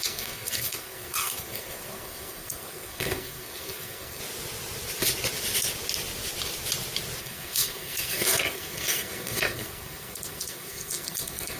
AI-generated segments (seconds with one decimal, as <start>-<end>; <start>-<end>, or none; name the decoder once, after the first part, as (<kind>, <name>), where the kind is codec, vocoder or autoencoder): 0.0-4.2 (codec, SNAC); 7.2-11.6